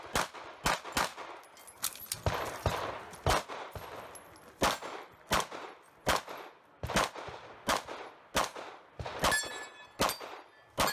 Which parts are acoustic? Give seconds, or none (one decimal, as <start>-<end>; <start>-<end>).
0.0-10.9